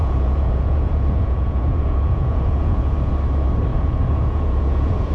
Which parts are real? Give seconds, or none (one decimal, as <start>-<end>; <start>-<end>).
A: 3.1-3.7